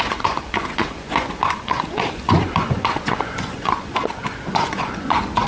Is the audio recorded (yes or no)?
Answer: no